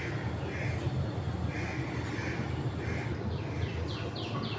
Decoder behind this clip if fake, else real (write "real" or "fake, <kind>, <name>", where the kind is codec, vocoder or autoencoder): real